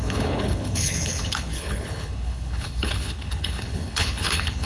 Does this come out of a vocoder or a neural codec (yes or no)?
yes